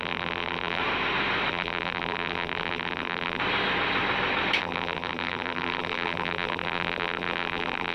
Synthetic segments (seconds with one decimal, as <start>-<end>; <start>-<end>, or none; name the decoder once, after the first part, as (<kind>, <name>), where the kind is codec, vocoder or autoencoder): 0.0-0.8 (vocoder, BigVGAN v2); 1.5-3.4; 4.6-7.9

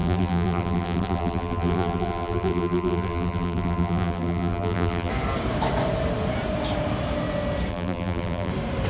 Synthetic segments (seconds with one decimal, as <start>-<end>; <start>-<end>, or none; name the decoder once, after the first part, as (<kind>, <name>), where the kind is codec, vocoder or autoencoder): 0.0-5.1 (vocoder, BigVGAN v2); 7.7-8.5

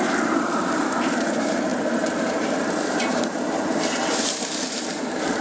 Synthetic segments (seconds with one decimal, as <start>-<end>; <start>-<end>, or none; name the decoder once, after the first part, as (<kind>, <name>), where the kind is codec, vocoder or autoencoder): 0.0-5.4 (vocoder, BigVGAN v2)

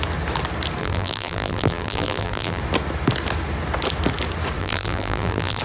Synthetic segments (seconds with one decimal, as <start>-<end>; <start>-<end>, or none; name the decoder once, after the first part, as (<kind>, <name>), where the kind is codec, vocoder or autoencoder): 0.8-2.6 (vocoder, BigVGAN v2); 4.6-5.6

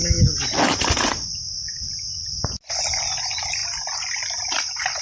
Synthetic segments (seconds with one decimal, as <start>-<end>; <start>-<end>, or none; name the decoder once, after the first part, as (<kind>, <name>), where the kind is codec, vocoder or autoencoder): 3.6-5.0 (vocoder, BigVGAN v2)

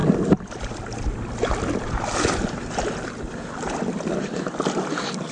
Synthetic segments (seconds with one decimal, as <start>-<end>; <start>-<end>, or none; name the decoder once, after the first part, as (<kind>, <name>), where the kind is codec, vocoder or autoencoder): none

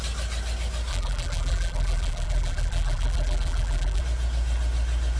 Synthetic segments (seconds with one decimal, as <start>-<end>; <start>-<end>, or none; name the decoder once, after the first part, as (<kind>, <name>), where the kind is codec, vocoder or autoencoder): 0.9-4.0 (vocoder, BigVGAN v2)